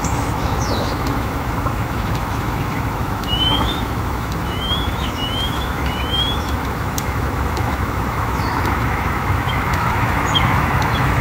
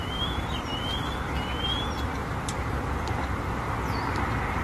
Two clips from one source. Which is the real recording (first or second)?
second